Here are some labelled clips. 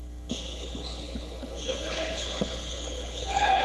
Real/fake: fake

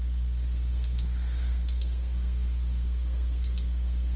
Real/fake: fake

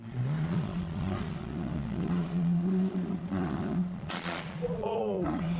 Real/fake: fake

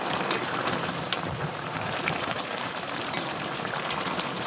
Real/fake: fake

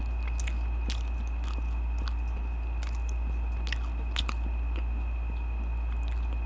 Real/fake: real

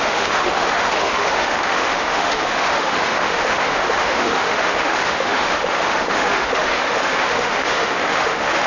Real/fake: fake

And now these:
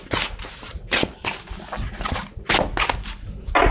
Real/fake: real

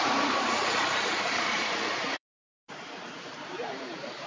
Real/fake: fake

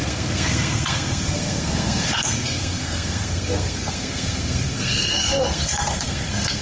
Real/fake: fake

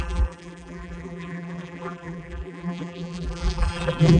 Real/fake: fake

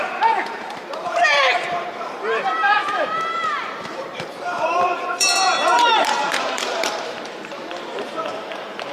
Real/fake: fake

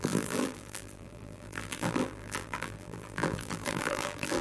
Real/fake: fake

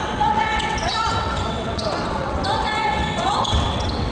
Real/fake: fake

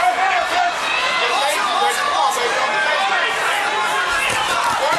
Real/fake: real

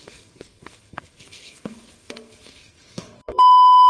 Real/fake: fake